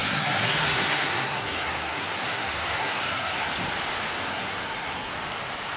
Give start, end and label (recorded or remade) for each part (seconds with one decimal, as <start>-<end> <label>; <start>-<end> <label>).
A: 0.0-3.5 remade; 3.5-4.3 recorded; 4.3-5.1 remade; 5.1-5.8 recorded